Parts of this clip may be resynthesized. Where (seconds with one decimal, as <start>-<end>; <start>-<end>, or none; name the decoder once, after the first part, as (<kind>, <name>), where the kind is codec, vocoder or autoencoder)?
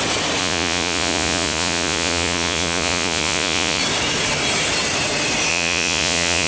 0.4-3.8 (vocoder, Vocos); 5.5-6.5